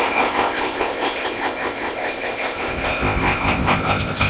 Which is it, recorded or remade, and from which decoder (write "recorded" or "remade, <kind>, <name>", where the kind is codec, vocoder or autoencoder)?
remade, codec, ZipCodec